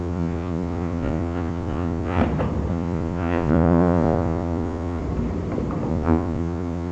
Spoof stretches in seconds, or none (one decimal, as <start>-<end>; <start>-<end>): 0.0-2.2; 2.7-5.0; 5.9-6.9